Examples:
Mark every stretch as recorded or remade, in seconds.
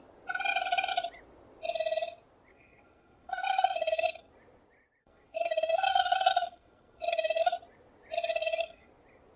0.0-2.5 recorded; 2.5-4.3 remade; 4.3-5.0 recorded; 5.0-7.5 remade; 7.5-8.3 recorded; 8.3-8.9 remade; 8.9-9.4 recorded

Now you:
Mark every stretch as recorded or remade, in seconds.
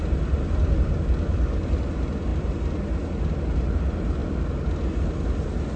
0.0-5.8 recorded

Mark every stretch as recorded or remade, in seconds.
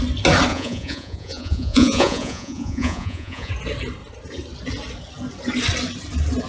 0.0-0.5 recorded; 0.5-3.5 remade; 3.5-6.5 recorded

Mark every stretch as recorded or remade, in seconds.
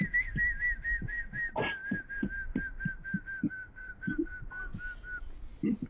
0.0-3.4 recorded; 3.4-3.9 remade; 3.9-5.9 recorded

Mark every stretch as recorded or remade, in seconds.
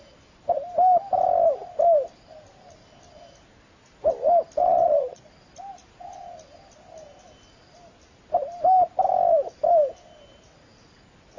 0.0-4.6 recorded; 4.6-5.3 remade; 5.3-11.4 recorded